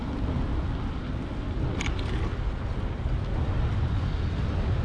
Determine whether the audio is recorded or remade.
recorded